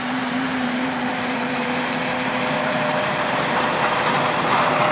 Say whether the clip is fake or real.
fake